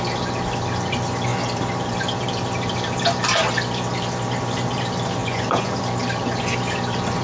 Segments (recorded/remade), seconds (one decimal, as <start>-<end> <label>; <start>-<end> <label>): 0.0-5.2 recorded; 5.2-5.8 remade; 5.8-7.2 recorded